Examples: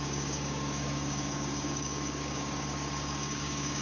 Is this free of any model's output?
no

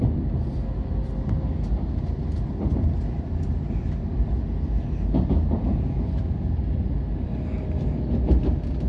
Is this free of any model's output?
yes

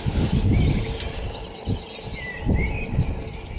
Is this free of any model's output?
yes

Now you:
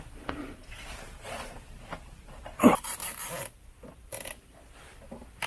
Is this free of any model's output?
no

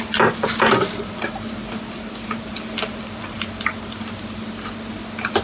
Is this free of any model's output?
yes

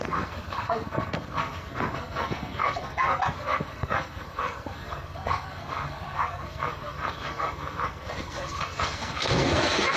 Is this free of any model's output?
no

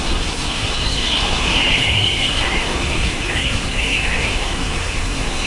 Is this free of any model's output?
no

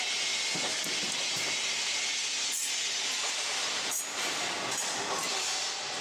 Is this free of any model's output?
yes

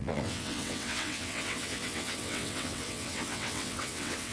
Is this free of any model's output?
no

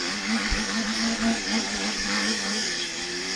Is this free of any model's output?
no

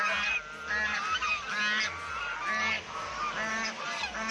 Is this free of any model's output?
yes